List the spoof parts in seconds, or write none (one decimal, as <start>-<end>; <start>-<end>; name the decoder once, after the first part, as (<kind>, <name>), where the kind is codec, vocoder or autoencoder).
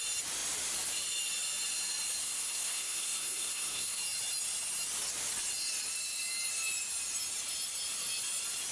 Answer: 2.2-4.0 (codec, SNAC)